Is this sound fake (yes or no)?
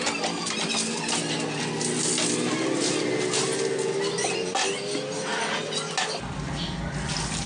no